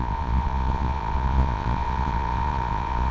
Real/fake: fake